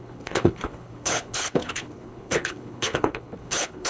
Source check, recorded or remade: remade